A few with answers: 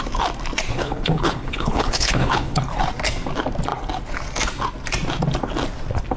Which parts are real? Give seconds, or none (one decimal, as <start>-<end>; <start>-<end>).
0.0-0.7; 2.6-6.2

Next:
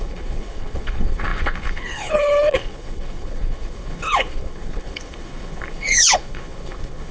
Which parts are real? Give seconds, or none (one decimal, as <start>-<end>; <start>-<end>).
none

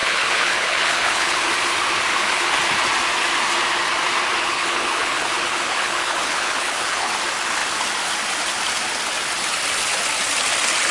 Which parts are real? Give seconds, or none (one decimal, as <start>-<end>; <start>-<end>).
1.5-2.1; 2.6-4.4; 7.1-10.9

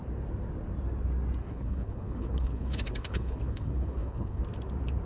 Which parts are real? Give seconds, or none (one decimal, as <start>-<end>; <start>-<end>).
0.0-1.4; 4.4-5.0